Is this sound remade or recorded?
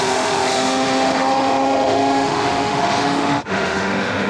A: remade